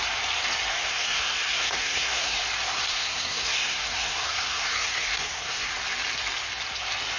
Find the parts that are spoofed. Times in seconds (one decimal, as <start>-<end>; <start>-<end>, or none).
0.7-2.4; 2.9-5.7